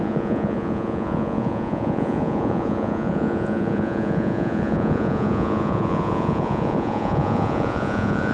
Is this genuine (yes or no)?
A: no